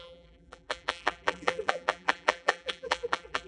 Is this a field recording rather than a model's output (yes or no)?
no